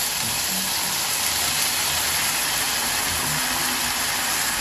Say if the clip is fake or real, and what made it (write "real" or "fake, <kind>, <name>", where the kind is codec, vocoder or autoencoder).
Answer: real